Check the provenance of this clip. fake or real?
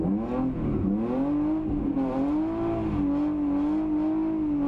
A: real